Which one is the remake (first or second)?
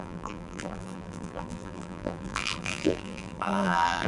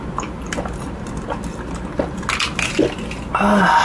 first